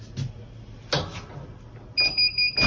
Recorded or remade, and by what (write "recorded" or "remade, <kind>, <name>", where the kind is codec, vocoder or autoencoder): recorded